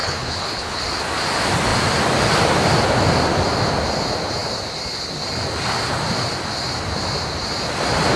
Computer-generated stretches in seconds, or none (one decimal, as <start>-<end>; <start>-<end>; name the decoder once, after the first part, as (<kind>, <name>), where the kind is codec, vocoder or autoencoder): 0.0-0.8 (codec, HILCodec)